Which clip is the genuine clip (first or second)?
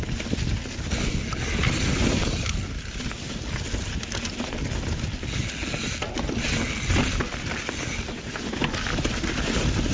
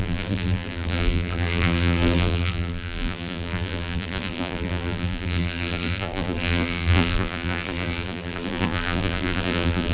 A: first